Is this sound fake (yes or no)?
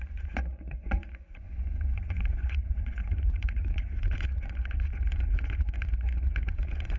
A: yes